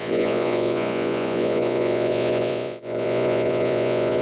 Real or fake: fake